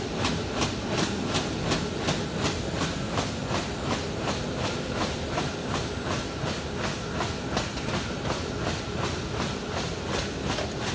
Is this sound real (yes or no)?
yes